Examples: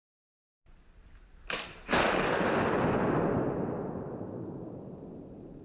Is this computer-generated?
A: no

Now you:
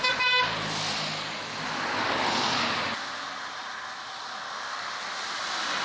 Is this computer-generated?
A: no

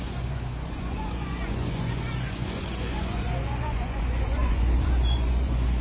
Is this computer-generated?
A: yes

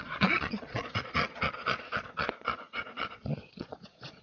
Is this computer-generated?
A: yes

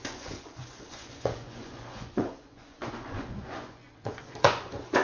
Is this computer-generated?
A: yes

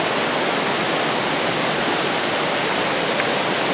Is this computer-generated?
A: no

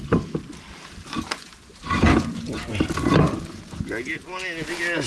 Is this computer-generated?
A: no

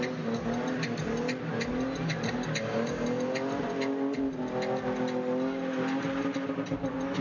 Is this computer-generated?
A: no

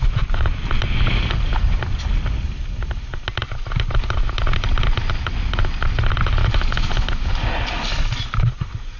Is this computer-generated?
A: no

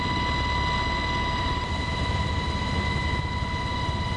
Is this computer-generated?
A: no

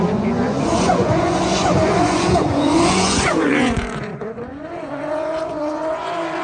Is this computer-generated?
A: yes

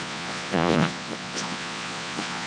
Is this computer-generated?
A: yes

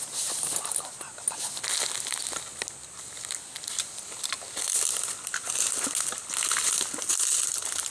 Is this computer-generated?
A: no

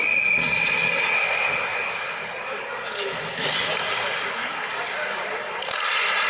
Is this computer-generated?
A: no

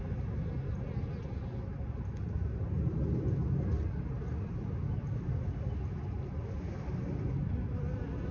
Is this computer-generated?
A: no